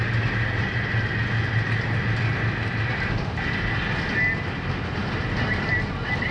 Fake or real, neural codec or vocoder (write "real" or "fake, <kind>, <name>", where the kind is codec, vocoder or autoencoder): real